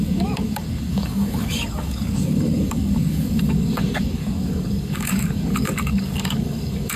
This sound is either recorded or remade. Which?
remade